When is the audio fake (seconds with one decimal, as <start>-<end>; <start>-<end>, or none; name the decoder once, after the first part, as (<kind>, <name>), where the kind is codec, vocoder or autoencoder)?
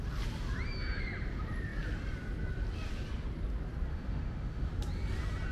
3.9-4.7 (autoencoder, DAC-VAE)